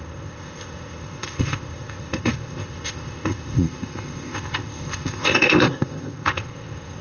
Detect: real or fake fake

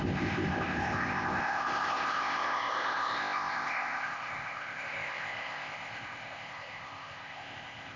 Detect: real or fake fake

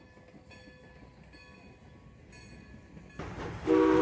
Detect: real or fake real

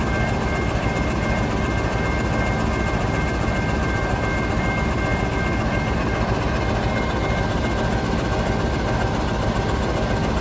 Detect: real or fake real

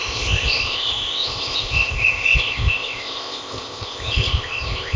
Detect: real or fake fake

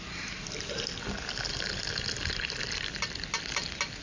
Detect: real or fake real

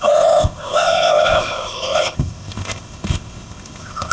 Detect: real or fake fake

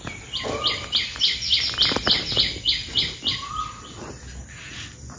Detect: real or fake real